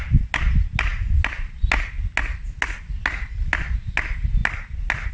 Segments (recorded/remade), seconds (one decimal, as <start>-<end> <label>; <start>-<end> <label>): 0.0-5.1 recorded